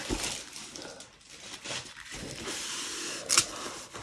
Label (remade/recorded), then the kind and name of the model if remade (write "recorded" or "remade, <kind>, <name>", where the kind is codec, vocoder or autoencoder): recorded